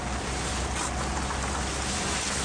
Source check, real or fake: real